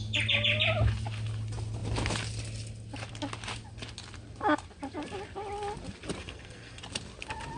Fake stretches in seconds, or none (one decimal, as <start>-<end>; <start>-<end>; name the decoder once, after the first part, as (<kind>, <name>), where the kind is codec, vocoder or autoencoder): 6.2-6.8 (codec, SNAC)